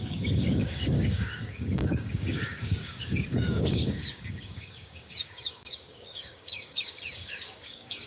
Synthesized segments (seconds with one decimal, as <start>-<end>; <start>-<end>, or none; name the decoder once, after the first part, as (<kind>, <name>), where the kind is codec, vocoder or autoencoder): 0.0-8.1 (codec, DAC)